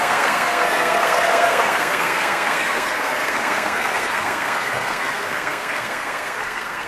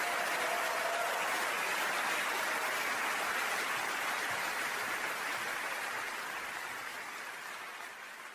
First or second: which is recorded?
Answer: second